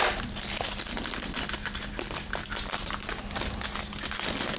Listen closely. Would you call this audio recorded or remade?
recorded